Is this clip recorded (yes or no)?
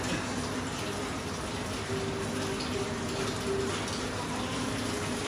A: yes